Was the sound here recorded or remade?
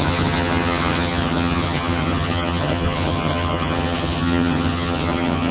remade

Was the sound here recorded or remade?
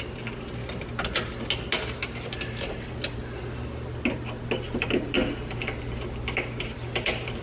recorded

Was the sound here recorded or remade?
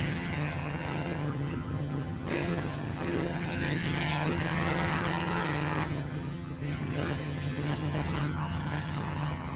remade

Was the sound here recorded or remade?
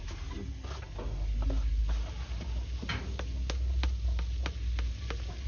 recorded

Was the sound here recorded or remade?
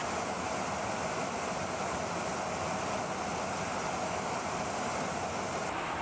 recorded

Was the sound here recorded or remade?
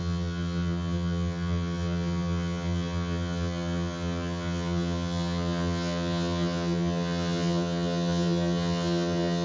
remade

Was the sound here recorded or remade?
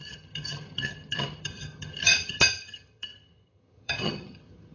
remade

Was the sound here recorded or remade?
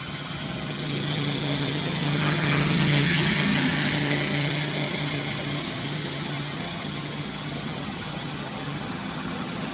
remade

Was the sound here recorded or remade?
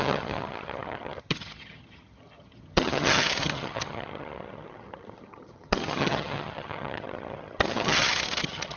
remade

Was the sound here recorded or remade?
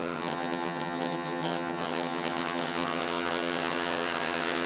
remade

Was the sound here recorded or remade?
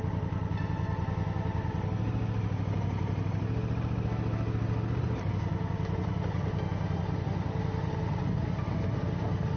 recorded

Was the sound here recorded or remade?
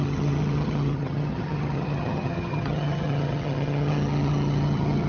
remade